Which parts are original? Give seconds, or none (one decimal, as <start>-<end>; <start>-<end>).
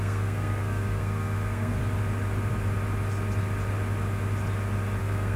1.8-5.0